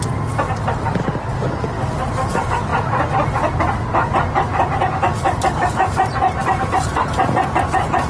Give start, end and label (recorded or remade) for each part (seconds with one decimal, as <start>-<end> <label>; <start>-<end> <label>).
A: 0.0-6.4 recorded; 6.4-7.2 remade; 7.2-8.1 recorded